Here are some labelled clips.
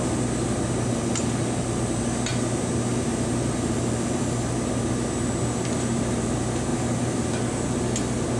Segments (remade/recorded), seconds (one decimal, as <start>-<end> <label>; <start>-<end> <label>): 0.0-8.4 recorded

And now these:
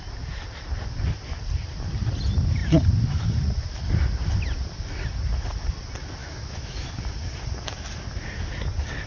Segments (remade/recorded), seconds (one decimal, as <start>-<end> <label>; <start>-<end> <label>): 0.0-6.2 recorded; 6.2-6.9 remade; 6.9-9.1 recorded

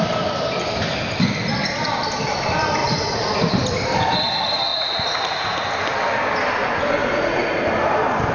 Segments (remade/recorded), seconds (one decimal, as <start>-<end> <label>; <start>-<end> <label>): 0.0-2.8 recorded; 2.8-3.5 remade; 3.5-4.7 recorded; 4.7-5.8 remade; 5.8-7.0 recorded; 7.0-7.5 remade; 7.5-8.3 recorded